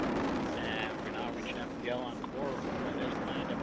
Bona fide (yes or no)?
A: yes